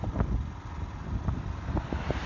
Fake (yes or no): no